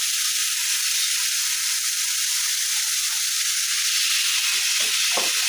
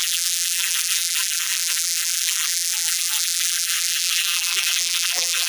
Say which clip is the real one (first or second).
first